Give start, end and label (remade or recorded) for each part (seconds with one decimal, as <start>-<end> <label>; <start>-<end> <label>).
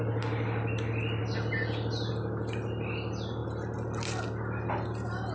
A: 0.0-5.3 recorded